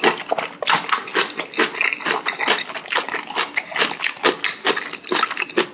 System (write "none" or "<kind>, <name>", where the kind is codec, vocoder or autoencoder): none